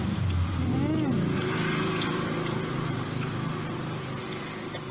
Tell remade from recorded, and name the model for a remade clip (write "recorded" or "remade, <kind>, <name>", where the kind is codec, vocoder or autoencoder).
recorded